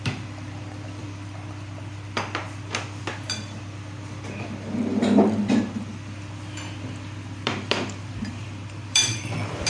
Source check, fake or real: fake